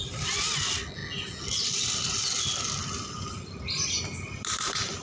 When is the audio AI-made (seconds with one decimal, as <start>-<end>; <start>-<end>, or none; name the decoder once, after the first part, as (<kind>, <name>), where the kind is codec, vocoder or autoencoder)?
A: none